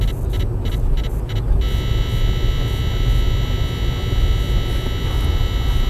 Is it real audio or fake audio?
real